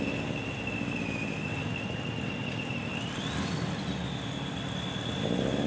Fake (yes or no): no